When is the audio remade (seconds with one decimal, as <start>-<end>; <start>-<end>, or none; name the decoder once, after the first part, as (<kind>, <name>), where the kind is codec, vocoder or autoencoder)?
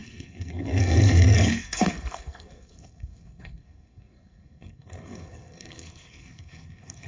0.0-7.1 (codec, SNAC)